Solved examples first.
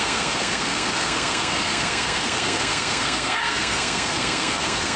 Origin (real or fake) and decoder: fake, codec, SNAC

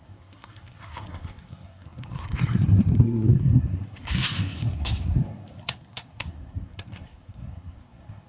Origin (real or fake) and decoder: fake, codec, SNAC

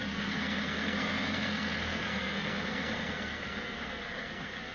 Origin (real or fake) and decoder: fake, codec, SNAC